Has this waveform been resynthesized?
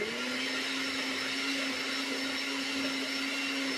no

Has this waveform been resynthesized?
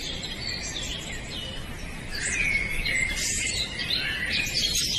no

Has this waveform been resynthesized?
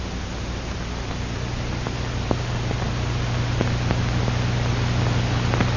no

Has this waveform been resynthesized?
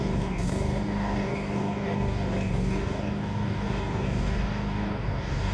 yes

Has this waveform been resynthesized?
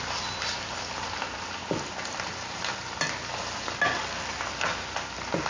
no